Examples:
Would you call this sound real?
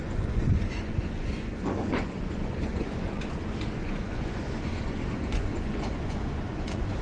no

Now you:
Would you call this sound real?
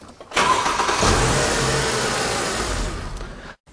yes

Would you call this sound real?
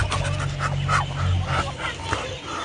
yes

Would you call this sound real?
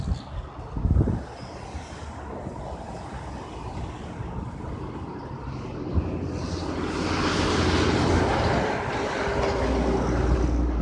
yes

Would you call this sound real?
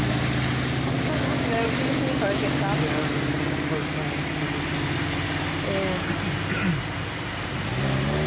yes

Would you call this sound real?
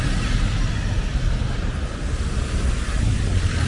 yes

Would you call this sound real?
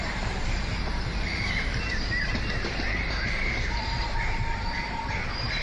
no